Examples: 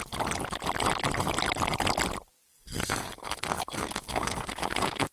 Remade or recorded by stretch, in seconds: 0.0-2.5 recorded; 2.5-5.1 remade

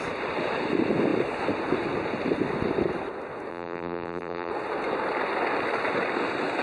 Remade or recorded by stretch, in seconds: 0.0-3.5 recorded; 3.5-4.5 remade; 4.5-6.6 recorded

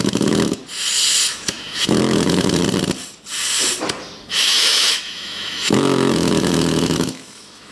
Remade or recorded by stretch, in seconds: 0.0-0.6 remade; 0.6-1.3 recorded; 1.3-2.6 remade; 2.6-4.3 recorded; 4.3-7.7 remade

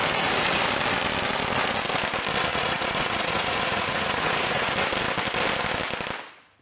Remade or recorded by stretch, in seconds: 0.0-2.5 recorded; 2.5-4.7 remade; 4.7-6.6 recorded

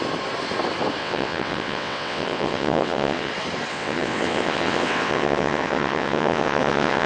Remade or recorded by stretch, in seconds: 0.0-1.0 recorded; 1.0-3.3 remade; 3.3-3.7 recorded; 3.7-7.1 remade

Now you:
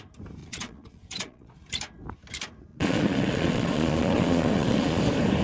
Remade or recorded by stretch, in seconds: 0.0-0.4 recorded; 0.4-1.5 remade; 1.5-2.7 recorded; 2.7-5.0 remade; 5.0-5.4 recorded